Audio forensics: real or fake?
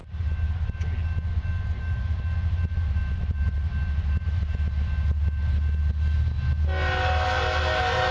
real